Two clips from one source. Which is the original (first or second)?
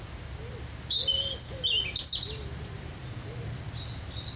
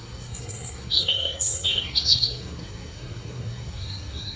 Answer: first